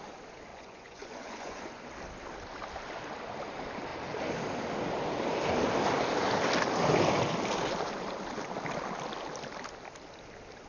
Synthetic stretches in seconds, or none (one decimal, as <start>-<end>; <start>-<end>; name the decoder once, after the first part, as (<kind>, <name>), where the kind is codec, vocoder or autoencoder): 0.5-1.8 (vocoder, Vocos)